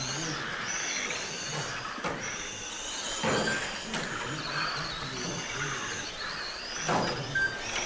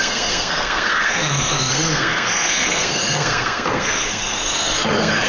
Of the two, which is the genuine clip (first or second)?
first